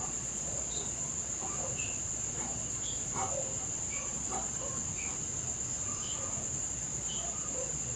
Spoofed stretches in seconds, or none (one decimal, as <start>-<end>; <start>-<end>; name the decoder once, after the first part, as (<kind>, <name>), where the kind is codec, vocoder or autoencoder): 0.0-1.1 (vocoder, Vocos); 2.1-3.2; 4.0-4.7; 6.6-8.0